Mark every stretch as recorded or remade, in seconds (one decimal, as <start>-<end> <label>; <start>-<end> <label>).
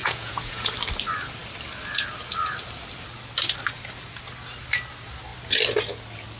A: 0.0-0.7 remade; 0.7-6.4 recorded